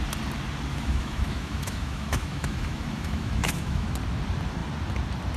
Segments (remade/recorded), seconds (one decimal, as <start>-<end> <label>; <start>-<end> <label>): 0.0-0.7 recorded; 0.7-3.9 remade; 3.9-5.4 recorded